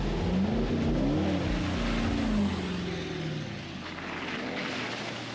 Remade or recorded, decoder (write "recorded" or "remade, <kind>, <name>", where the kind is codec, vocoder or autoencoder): recorded